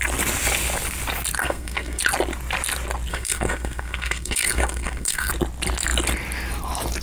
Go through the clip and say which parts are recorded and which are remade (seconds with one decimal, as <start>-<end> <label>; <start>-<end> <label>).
0.0-1.4 recorded; 1.4-2.0 remade; 2.0-3.1 recorded; 3.1-5.3 remade; 5.3-7.0 recorded